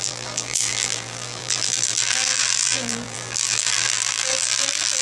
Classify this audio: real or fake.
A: fake